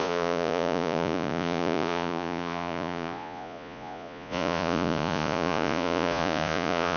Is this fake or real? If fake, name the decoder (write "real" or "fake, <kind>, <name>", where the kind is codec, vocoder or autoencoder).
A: fake, vocoder, Vocos